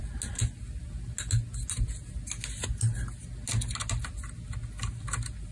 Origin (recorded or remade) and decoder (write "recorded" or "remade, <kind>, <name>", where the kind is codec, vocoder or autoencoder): recorded